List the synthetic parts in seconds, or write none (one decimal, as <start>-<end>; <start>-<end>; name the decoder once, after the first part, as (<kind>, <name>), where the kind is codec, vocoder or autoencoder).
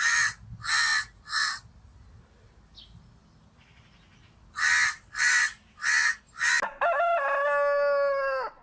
none